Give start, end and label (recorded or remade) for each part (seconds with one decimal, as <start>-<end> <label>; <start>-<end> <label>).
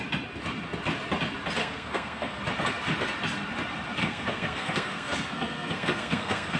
0.0-1.6 recorded; 1.6-2.4 remade; 2.4-4.0 recorded; 4.0-6.6 remade